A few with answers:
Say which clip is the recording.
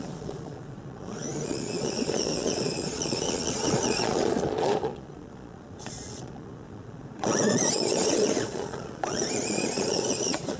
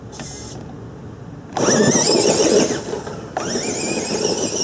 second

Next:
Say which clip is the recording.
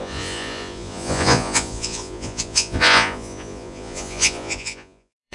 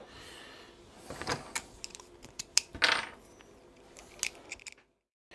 second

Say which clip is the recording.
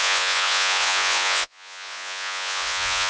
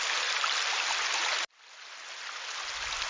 second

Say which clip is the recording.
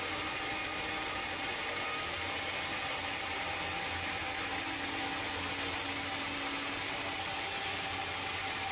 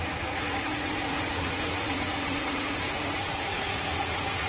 first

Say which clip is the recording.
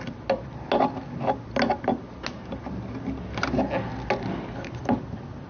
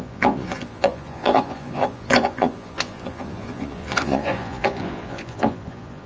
first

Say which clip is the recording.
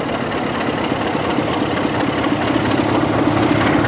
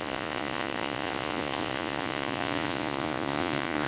first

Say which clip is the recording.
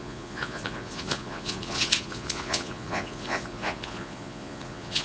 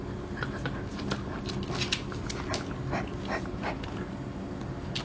second